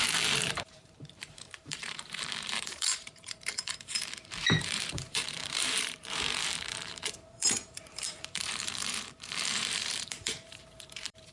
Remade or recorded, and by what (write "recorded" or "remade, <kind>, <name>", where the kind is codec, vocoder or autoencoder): remade, vocoder, BigVGAN v2